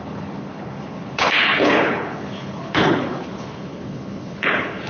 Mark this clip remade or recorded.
remade